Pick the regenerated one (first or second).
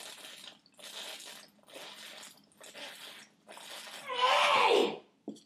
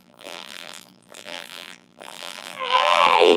second